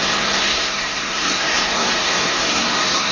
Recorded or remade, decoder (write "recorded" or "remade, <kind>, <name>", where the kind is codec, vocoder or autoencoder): remade, codec, SNAC